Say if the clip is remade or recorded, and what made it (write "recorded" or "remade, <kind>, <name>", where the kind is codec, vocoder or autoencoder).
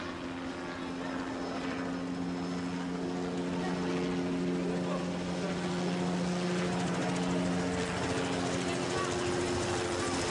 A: recorded